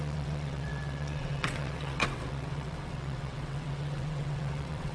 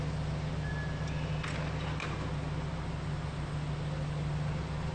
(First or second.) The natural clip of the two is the second